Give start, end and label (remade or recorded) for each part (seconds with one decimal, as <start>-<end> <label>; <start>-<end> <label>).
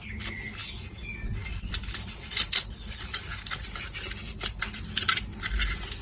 0.0-0.6 recorded; 0.6-1.3 remade; 1.3-6.0 recorded